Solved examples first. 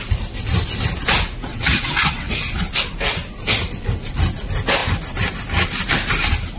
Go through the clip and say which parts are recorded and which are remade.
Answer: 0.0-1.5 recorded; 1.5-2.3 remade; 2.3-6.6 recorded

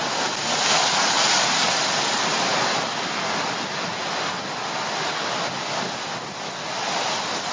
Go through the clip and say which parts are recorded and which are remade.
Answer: 0.0-7.5 recorded

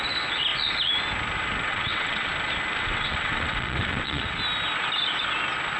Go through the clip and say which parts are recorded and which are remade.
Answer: 0.0-1.7 recorded; 1.7-2.3 remade; 2.3-2.8 recorded; 2.8-4.4 remade; 4.4-5.8 recorded